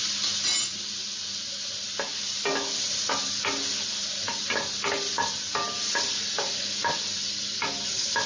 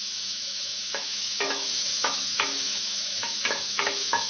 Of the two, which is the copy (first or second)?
second